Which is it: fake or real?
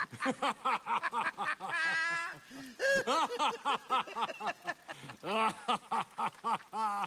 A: real